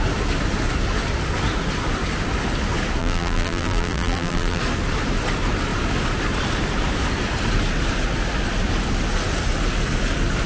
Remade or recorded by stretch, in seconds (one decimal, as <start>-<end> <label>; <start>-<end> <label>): 0.0-3.0 recorded; 3.0-4.6 remade; 4.6-10.5 recorded